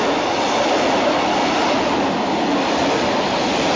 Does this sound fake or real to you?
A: real